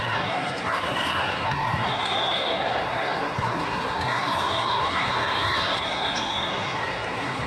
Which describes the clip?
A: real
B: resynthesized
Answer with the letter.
B